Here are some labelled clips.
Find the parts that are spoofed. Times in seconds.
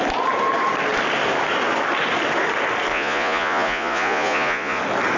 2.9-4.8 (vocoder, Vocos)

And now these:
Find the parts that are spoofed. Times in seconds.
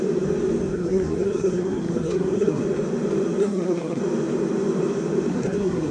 0.7-2.6 (codec, SNAC); 3.4-4.0; 5.3-5.9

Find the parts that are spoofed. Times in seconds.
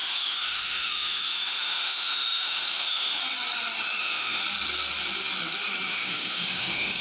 0.0-3.2 (autoencoder, DAC-VAE); 4.0-4.4; 5.9-7.0